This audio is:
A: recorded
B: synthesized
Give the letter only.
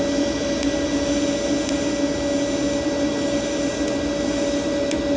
A